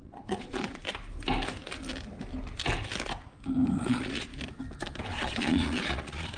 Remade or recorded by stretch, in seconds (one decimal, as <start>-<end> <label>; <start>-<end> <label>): 0.0-0.8 remade; 0.8-3.8 recorded; 3.8-4.3 remade; 4.3-5.0 recorded; 5.0-6.4 remade

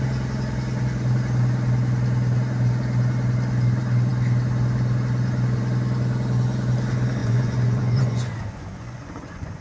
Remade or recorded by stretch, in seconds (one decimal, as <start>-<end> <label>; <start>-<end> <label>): 0.0-7.2 recorded; 7.2-9.6 remade

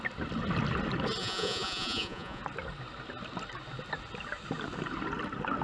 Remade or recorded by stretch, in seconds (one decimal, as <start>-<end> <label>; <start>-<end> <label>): 0.0-1.2 recorded; 1.2-2.4 remade; 2.4-5.6 recorded